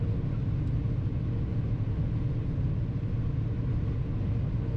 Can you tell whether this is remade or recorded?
recorded